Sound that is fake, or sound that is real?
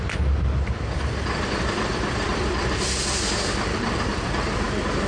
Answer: fake